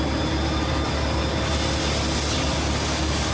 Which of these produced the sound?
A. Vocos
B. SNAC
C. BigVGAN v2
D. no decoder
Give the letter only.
D